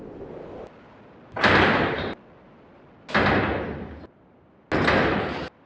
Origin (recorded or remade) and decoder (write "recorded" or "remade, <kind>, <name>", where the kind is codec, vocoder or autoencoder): recorded